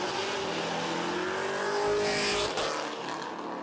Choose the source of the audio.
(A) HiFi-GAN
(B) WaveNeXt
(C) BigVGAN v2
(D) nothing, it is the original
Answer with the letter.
D